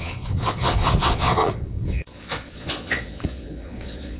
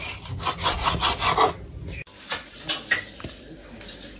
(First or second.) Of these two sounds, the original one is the second